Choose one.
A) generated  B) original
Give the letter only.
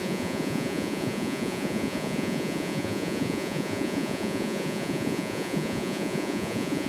A